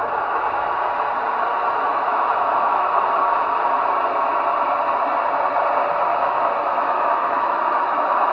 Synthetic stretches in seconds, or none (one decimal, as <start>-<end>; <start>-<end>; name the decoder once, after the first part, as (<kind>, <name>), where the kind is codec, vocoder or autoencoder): 0.0-0.7 (autoencoder, DAC-VAE); 1.9-3.0; 6.1-8.3